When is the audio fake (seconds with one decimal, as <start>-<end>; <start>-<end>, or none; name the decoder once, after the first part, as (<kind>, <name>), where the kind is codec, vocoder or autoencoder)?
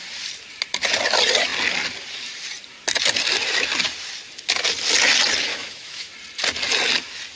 5.5-6.1 (autoencoder, DAC-VAE)